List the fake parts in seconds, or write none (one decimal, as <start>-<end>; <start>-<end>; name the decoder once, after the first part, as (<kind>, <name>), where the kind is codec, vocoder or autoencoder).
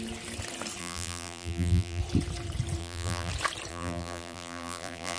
0.8-2.0 (vocoder, BigVGAN v2); 2.8-3.3; 3.7-5.2